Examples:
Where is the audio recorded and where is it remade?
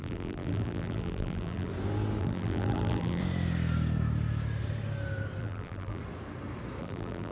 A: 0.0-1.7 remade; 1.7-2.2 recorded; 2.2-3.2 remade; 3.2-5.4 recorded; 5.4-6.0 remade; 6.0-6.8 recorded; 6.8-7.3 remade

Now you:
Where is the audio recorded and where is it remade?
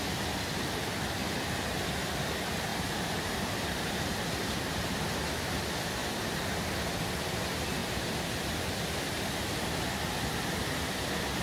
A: 0.0-2.7 recorded; 2.7-5.0 remade; 5.0-11.4 recorded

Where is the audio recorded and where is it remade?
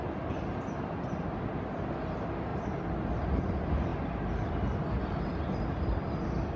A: 0.0-6.6 recorded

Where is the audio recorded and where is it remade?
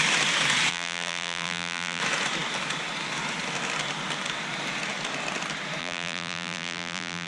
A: 0.0-0.7 recorded; 0.7-2.0 remade; 2.0-5.8 recorded; 5.8-7.3 remade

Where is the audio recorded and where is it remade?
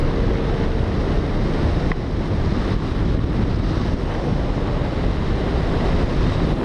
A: 0.0-6.6 recorded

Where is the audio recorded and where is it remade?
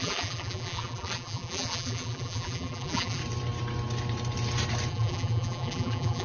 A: 0.0-3.2 remade; 3.2-4.9 recorded; 4.9-6.2 remade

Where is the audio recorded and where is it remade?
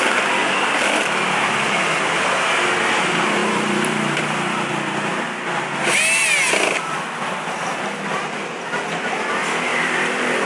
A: 0.0-0.4 recorded; 0.4-2.3 remade; 2.3-3.4 recorded; 3.4-4.7 remade; 4.7-9.7 recorded; 9.7-10.5 remade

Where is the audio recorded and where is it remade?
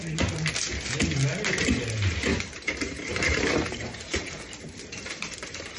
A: 0.0-2.3 recorded; 2.3-5.8 remade